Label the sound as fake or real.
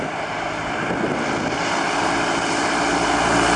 real